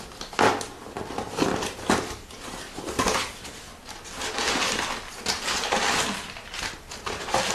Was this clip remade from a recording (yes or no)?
no